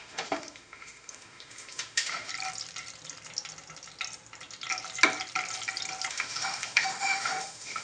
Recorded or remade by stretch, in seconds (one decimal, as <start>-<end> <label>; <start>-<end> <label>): 0.0-2.3 remade; 2.3-6.1 recorded; 6.1-7.8 remade